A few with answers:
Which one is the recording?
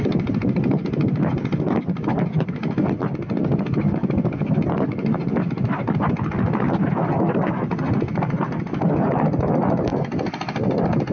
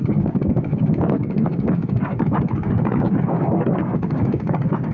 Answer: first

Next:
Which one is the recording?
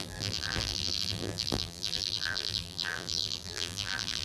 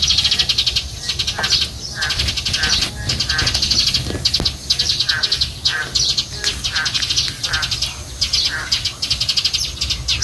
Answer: second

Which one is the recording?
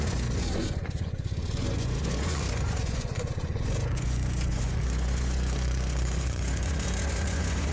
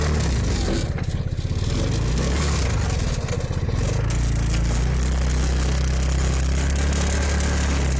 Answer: second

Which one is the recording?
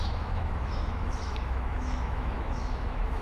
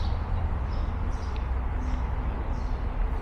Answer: second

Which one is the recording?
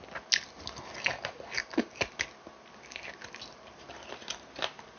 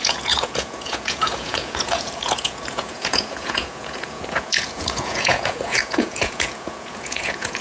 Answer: first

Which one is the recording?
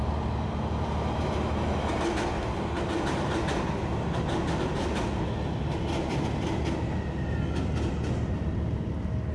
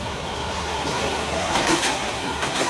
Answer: first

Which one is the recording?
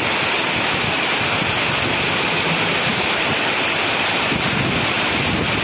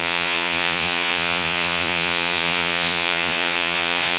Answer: first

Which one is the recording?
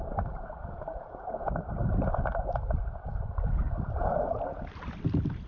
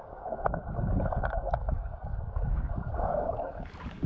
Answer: first